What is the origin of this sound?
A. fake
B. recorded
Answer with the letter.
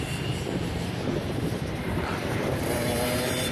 A